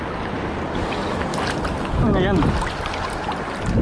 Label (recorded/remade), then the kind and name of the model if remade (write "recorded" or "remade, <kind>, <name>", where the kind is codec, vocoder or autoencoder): recorded